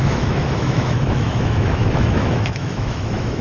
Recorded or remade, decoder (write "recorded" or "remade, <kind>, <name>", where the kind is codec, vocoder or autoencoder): remade, autoencoder, DAC-VAE